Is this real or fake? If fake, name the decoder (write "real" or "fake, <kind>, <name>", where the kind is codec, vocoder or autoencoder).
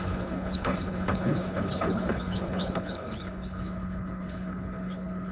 fake, codec, HILCodec